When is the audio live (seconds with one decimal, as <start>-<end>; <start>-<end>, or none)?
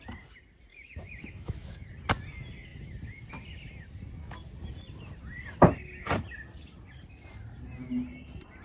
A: 0.0-0.7; 1.9-8.6